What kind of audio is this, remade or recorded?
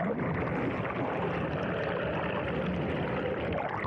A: recorded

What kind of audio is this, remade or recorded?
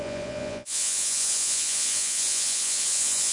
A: remade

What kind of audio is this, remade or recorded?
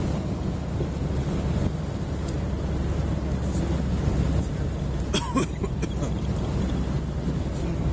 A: recorded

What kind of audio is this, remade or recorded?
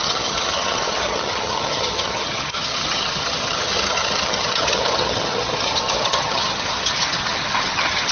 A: remade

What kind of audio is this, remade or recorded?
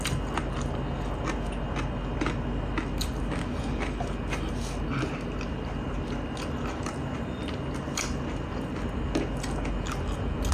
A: recorded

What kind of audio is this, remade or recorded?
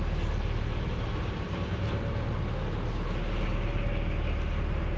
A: recorded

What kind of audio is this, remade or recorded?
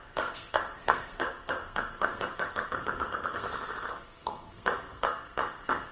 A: remade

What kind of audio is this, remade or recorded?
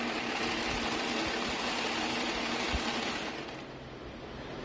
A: remade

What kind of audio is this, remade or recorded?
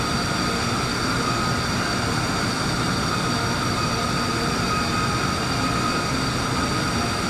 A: remade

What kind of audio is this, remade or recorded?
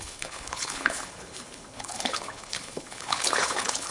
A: remade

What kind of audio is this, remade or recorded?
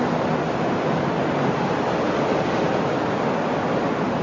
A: recorded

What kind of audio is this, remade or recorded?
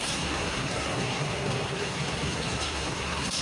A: remade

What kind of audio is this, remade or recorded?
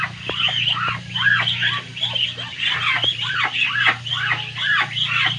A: recorded